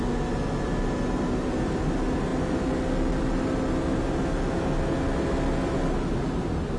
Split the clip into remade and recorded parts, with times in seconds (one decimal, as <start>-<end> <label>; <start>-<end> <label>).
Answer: 0.0-6.8 recorded